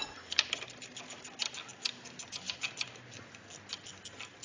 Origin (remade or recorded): recorded